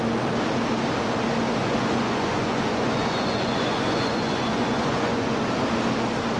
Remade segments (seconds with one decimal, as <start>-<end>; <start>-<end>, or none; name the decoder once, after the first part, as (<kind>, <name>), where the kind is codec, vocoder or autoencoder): 1.6-5.4 (vocoder, Vocos)